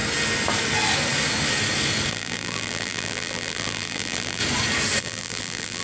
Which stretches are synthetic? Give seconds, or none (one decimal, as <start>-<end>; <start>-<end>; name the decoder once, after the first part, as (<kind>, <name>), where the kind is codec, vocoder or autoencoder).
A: 2.1-4.4 (vocoder, BigVGAN v2); 5.0-5.8